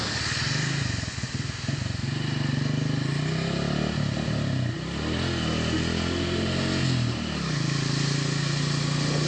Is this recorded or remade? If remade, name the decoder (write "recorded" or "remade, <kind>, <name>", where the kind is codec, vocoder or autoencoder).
recorded